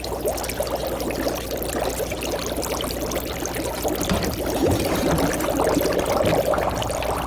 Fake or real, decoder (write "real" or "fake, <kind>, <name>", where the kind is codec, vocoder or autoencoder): real